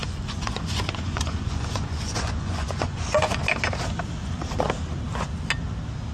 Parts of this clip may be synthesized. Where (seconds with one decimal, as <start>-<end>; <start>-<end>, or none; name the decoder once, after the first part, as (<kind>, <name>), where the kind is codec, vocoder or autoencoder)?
0.0-3.4 (vocoder, Vocos); 4.2-4.7